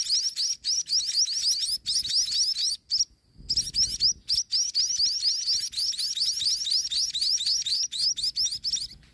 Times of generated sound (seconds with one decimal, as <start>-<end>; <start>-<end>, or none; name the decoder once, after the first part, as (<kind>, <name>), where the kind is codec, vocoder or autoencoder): none